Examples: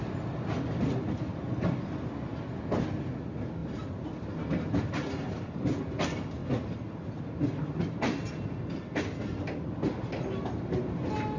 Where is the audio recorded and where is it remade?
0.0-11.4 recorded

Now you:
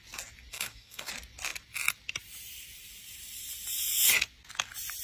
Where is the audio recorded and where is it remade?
0.0-0.5 recorded; 0.5-1.1 remade; 1.1-5.0 recorded